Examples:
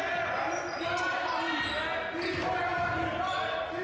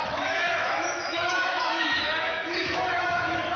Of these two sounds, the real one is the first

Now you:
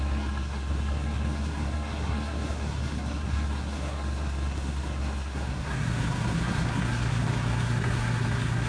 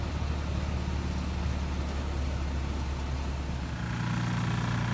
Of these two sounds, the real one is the second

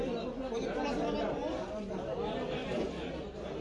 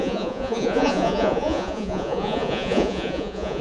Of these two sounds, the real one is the first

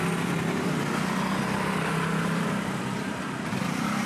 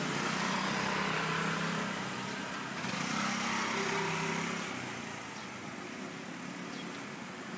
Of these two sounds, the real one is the second